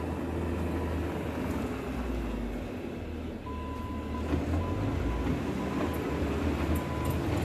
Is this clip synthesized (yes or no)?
no